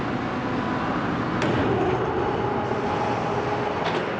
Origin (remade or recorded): recorded